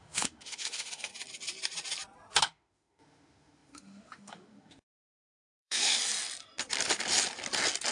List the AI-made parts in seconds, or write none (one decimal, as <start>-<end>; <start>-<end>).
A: 0.0-1.1; 2.4-6.0